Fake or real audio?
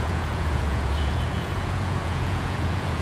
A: fake